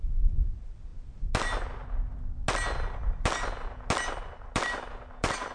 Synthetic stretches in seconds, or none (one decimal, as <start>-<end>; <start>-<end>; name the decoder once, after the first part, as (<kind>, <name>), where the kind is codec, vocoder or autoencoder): none